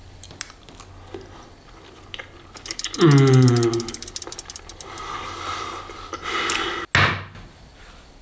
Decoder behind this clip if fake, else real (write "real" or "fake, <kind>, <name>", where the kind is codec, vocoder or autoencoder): real